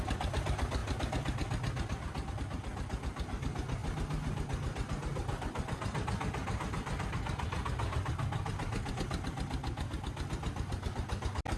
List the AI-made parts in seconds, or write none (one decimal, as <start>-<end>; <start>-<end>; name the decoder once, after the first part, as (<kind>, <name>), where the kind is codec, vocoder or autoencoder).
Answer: none